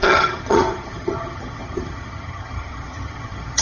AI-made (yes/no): yes